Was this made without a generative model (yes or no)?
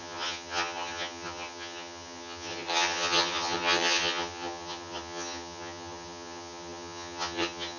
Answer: no